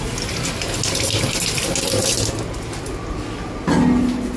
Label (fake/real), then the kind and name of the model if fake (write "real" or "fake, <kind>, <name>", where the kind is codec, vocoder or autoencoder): real